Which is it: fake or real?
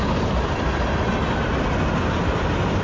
real